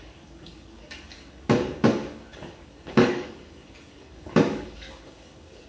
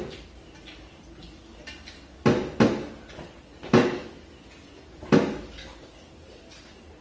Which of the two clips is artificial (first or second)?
first